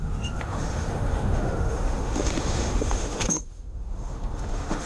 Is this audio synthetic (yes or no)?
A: yes